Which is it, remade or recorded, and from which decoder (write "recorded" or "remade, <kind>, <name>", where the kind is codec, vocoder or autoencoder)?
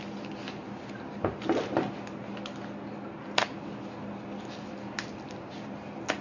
recorded